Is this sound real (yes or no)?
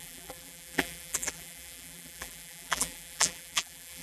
no